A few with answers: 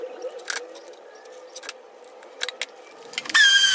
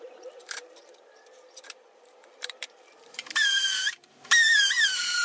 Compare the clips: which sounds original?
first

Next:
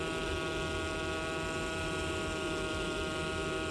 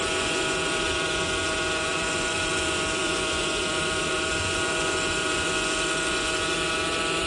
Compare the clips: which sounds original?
first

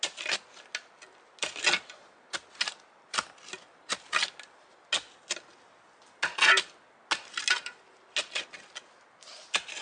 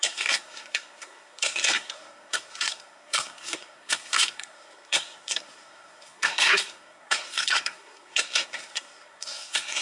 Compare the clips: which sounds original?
first